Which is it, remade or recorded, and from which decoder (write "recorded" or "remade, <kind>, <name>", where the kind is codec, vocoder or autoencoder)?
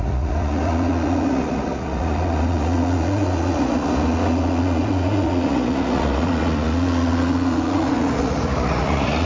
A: remade, vocoder, Vocos